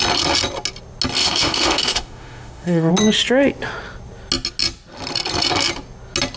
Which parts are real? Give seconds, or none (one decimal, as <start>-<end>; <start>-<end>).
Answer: 0.0-1.2; 2.9-6.4